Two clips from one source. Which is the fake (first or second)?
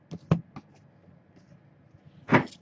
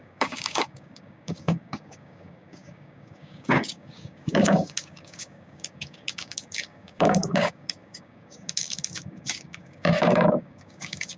second